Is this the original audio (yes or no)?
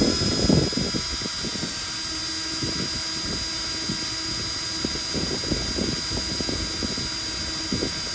yes